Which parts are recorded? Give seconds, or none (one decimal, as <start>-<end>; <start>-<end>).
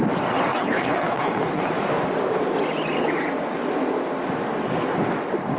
0.0-0.5; 1.7-5.6